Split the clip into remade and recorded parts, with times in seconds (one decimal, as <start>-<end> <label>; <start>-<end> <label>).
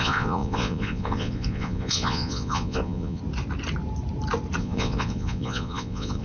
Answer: 0.0-3.2 remade; 3.2-4.6 recorded; 4.6-6.2 remade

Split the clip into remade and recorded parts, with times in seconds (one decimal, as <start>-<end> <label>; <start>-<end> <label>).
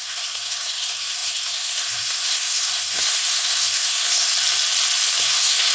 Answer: 0.0-4.3 remade; 4.3-5.2 recorded; 5.2-5.7 remade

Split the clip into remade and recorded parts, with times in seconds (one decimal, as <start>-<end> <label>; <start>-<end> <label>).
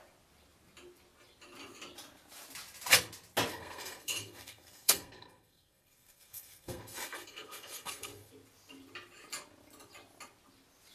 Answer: 0.0-3.5 recorded; 3.5-8.3 remade; 8.3-10.9 recorded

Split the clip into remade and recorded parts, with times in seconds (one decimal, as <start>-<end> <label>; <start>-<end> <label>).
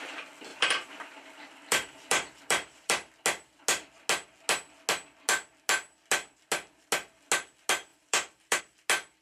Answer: 0.0-0.5 recorded; 0.5-3.1 remade; 3.1-7.9 recorded; 7.9-8.6 remade; 8.6-9.2 recorded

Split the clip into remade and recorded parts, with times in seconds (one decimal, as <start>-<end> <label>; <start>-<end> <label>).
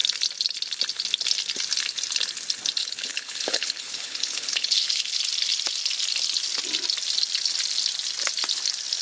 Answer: 0.0-2.8 recorded; 2.8-5.2 remade; 5.2-9.0 recorded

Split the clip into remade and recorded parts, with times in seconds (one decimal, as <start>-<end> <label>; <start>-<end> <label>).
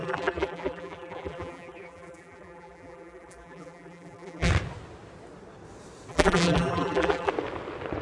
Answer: 0.0-4.5 remade; 4.5-6.1 recorded; 6.1-7.3 remade; 7.3-8.0 recorded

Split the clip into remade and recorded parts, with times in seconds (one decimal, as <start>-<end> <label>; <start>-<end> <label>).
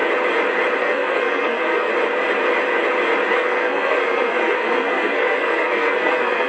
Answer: 0.0-0.8 recorded; 0.8-1.9 remade; 1.9-3.3 recorded; 3.3-6.5 remade